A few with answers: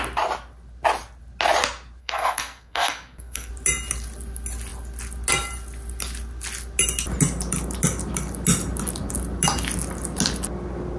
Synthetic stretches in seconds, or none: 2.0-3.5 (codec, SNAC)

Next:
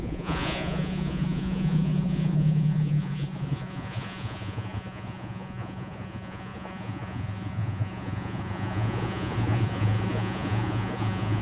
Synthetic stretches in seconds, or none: 0.0-11.4 (vocoder, Vocos)

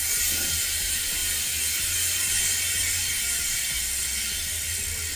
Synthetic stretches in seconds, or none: none

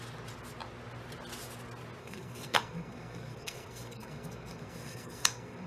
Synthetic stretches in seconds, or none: 2.0-5.7 (codec, SNAC)

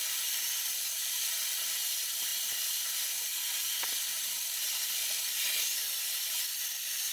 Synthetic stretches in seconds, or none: none

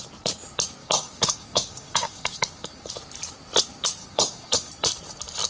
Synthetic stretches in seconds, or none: 0.8-2.9 (codec, DAC); 4.0-4.7

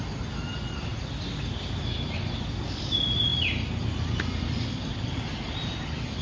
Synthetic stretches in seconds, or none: 0.9-2.6 (vocoder, BigVGAN v2); 3.3-5.1

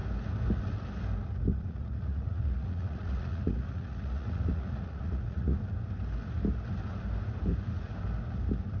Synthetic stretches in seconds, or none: 1.5-5.6 (vocoder, Vocos)